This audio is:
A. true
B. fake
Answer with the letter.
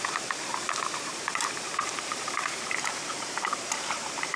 B